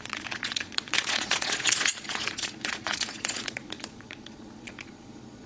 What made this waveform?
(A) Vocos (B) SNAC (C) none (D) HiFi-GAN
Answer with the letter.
A